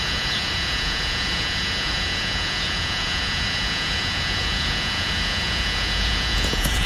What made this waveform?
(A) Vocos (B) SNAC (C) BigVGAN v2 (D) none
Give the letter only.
A